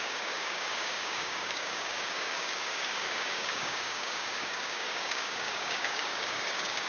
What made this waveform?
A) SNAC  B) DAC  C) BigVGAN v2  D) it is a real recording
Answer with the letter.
B